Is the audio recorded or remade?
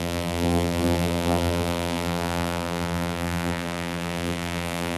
remade